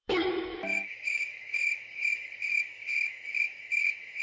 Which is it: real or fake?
fake